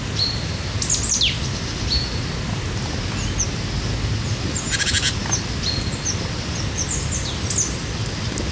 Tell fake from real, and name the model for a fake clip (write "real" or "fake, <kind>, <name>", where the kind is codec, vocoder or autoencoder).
real